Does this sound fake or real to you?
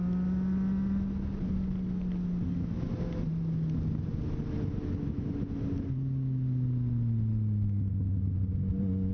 real